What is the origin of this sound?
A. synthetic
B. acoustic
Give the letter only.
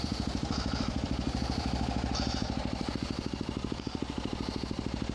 A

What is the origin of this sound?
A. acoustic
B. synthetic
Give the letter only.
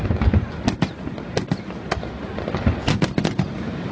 A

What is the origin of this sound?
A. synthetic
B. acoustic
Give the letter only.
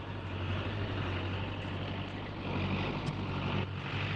B